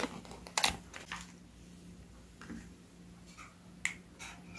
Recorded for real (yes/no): yes